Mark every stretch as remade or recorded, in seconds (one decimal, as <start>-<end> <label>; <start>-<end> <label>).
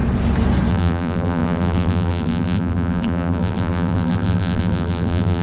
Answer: 0.0-0.7 recorded; 0.7-5.4 remade